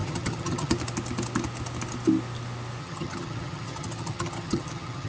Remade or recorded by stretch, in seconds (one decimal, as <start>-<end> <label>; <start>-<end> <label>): 0.0-0.7 remade; 0.7-2.8 recorded; 2.8-5.1 remade